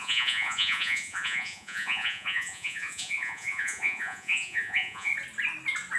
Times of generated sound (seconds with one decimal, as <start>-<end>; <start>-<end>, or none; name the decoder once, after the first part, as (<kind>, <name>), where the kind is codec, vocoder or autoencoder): 0.0-5.1 (vocoder, Vocos)

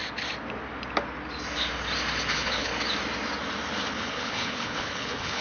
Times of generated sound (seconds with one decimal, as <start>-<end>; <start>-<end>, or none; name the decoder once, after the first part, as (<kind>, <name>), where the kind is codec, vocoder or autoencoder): 2.3-2.7 (codec, HILCodec); 3.9-5.4

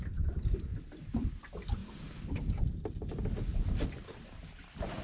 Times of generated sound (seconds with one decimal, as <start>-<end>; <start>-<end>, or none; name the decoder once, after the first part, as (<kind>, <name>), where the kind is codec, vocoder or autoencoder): 0.7-1.4 (vocoder, BigVGAN v2); 3.5-4.4

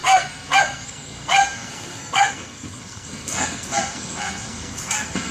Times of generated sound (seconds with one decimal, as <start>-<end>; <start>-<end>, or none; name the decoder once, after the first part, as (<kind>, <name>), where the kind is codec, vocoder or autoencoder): 0.0-5.3 (codec, SNAC)

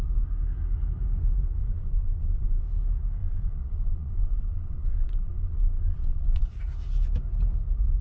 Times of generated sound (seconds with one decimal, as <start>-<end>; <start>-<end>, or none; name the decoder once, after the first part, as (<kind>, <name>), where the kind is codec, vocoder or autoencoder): 1.6-2.6 (vocoder, Vocos); 3.2-6.6

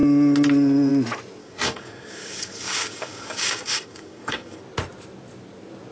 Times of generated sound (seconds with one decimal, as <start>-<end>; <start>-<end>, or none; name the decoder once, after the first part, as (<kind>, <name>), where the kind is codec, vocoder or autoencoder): 1.4-4.6 (codec, DAC)

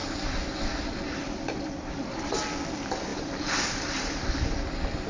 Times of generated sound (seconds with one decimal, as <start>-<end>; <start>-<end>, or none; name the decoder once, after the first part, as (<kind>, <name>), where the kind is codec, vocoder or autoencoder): none

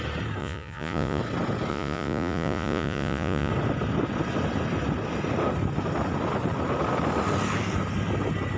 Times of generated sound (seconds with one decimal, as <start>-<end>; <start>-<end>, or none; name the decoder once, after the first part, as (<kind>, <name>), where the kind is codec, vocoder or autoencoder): 0.4-1.2 (vocoder, Vocos); 1.7-3.5